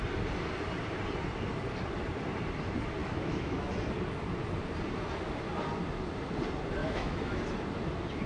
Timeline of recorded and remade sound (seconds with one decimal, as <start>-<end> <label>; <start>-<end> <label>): 0.0-3.0 recorded; 3.0-3.7 remade; 3.7-6.8 recorded; 6.8-7.4 remade; 7.4-8.3 recorded